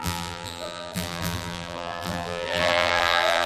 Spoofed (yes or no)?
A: yes